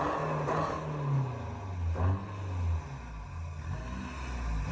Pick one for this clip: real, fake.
real